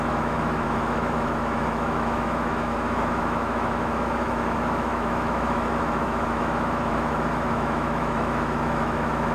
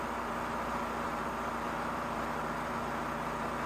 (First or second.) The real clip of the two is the second